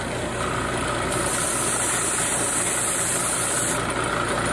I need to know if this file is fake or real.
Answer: real